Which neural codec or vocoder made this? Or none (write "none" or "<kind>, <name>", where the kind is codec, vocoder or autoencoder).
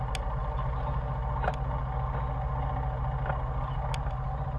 none